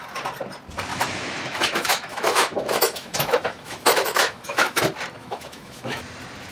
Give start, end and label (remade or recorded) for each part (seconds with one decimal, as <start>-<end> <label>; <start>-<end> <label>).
0.0-0.9 recorded; 0.9-4.8 remade; 4.8-5.2 recorded; 5.2-6.0 remade; 6.0-6.5 recorded